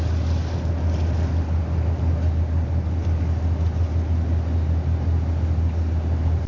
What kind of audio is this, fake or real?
real